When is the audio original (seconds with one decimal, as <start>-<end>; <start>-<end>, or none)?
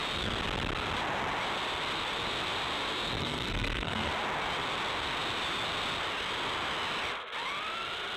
0.0-3.2; 4.1-8.2